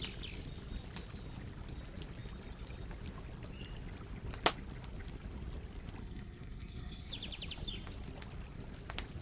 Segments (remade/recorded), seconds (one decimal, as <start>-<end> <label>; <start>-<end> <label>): 0.0-6.0 recorded; 6.0-7.1 remade; 7.1-9.2 recorded